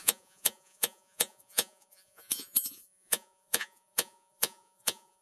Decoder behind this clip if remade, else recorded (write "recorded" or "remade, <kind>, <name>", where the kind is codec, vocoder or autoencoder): remade, vocoder, Vocos